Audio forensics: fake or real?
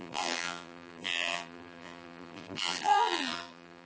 fake